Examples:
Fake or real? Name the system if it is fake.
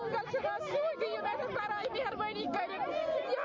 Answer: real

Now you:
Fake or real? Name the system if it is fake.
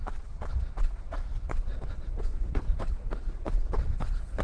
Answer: fake, vocoder, Vocos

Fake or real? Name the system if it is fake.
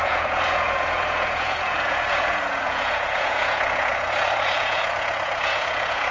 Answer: fake, vocoder, Vocos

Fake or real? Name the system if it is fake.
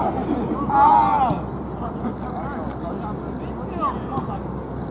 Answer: real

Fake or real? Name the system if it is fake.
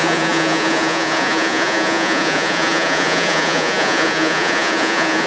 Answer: fake, vocoder, Vocos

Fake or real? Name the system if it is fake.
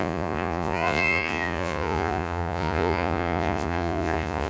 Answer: fake, vocoder, Vocos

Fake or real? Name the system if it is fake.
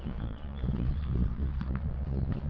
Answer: fake, vocoder, Vocos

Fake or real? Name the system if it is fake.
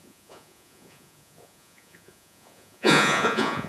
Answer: fake, vocoder, Vocos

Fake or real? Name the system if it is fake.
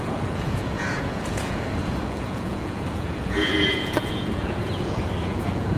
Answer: fake, vocoder, Vocos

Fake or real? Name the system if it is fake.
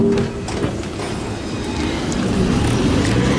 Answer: real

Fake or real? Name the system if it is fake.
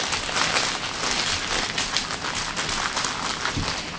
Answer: real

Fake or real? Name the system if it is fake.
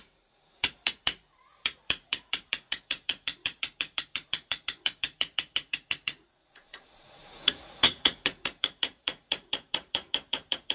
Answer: fake, vocoder, Vocos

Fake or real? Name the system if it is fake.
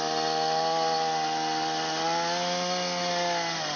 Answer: real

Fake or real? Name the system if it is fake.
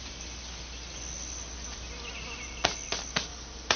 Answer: real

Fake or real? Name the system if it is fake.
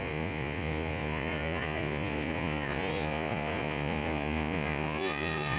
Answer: fake, vocoder, Vocos